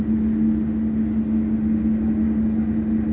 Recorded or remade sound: recorded